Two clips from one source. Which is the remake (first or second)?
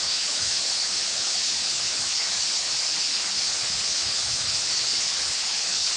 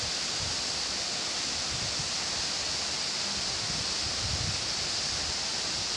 first